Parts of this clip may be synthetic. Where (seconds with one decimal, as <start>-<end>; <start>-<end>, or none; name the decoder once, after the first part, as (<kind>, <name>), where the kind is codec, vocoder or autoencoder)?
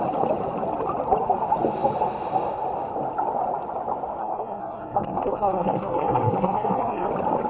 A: 4.2-7.1 (codec, SNAC)